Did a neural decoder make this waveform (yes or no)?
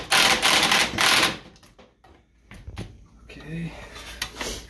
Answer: no